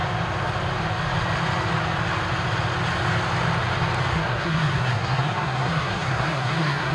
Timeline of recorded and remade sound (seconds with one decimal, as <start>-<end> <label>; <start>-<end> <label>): 0.0-4.1 recorded; 4.1-6.9 remade